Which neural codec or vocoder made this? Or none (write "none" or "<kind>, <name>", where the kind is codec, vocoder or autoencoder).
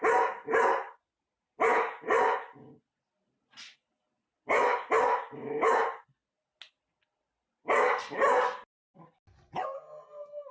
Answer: none